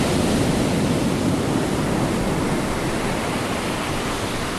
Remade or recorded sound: recorded